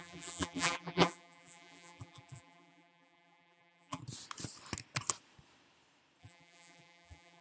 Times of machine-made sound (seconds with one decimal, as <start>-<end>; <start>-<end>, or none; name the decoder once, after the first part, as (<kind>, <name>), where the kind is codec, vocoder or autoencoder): 0.0-4.0 (vocoder, BigVGAN v2); 6.2-7.4